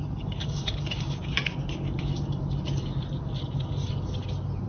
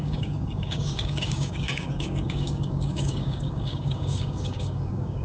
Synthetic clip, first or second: second